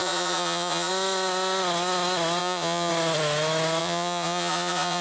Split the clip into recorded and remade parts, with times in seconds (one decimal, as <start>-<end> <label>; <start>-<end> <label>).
0.0-0.9 remade; 0.9-2.4 recorded; 2.4-2.9 remade; 2.9-3.8 recorded; 3.8-5.0 remade